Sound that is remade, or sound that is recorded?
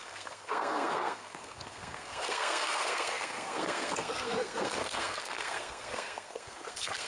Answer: remade